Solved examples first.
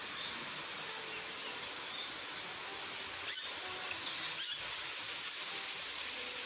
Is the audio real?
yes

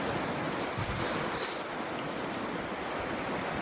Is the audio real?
yes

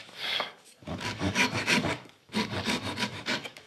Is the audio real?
no